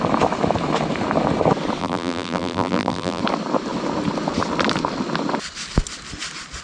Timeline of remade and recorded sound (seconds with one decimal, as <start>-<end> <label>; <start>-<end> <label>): 0.0-1.8 recorded; 1.8-3.2 remade; 3.2-6.6 recorded